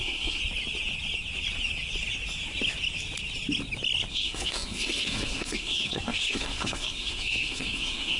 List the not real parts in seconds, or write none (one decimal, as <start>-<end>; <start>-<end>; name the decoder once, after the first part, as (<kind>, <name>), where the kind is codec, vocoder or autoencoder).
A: 0.0-0.4 (codec, SNAC); 4.1-8.2